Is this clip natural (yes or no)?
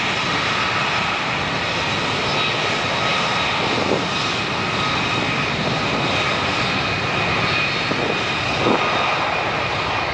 yes